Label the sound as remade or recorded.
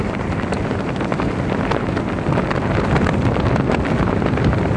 recorded